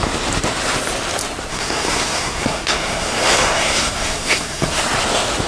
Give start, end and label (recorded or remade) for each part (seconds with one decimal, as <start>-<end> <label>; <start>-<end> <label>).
0.0-1.5 recorded; 1.5-4.8 remade; 4.8-5.5 recorded